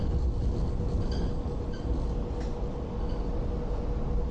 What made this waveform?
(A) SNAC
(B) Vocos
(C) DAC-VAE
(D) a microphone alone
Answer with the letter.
D